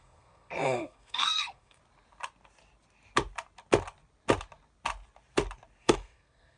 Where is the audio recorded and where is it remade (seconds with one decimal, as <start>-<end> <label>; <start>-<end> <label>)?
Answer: 0.0-1.8 remade; 1.8-5.8 recorded; 5.8-6.6 remade